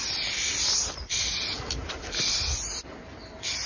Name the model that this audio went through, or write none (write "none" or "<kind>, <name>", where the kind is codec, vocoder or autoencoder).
none